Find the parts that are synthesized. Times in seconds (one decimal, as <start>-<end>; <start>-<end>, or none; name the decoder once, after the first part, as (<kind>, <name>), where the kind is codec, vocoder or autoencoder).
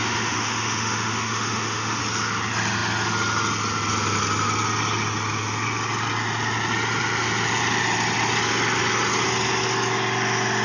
0.0-2.0 (autoencoder, DAC-VAE)